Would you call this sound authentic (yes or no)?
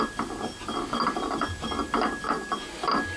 yes